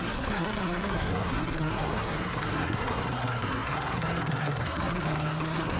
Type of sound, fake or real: fake